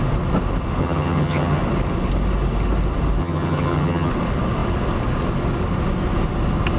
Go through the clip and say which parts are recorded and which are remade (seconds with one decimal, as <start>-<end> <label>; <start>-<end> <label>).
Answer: 0.0-0.8 recorded; 0.8-1.6 remade; 1.6-3.2 recorded; 3.2-4.1 remade; 4.1-6.8 recorded